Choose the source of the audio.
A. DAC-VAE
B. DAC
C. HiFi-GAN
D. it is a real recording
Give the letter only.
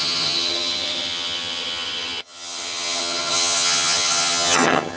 C